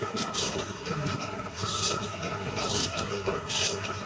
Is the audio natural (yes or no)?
no